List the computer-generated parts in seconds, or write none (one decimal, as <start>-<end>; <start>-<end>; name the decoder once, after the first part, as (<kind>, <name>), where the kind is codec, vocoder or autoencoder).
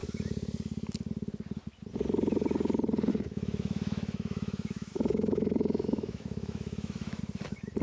3.1-7.2 (autoencoder, DAC-VAE)